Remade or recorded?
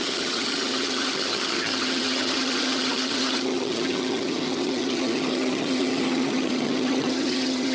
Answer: remade